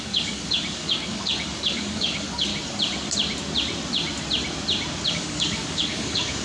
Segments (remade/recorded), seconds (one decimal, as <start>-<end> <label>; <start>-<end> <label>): 0.0-2.5 remade; 2.5-5.1 recorded; 5.1-6.4 remade